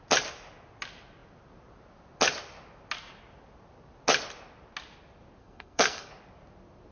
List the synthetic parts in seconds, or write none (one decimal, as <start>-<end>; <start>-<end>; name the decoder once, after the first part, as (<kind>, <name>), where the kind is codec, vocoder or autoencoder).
5.4-6.1 (codec, SNAC)